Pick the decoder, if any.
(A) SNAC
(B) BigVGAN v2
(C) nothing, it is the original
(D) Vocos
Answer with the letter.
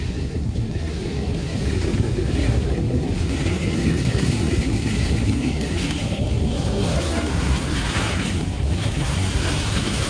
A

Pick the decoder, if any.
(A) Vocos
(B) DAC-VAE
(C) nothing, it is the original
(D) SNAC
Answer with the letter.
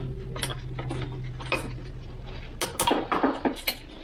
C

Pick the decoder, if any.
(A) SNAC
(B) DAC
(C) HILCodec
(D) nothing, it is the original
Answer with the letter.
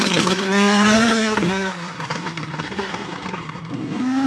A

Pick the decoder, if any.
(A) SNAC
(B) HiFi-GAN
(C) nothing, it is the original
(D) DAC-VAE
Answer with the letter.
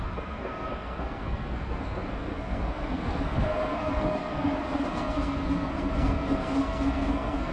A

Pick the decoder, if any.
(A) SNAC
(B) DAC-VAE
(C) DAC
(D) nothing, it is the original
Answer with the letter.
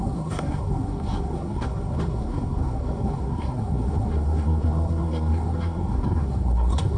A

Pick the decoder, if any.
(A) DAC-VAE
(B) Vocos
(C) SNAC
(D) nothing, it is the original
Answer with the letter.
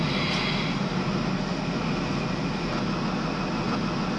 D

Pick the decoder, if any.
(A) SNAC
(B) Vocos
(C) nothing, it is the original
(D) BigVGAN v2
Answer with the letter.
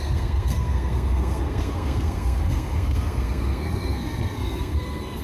A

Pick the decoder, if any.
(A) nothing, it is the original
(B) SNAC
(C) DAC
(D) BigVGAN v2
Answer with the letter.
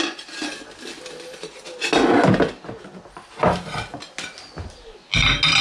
A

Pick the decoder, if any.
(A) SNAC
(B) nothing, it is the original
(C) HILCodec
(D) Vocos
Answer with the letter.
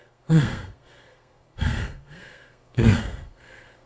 A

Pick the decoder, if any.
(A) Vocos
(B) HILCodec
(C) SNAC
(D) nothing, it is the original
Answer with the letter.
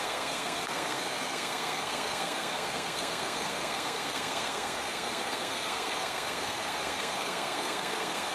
C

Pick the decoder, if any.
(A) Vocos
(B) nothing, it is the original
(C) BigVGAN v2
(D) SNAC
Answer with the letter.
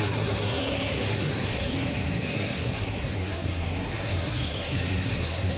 D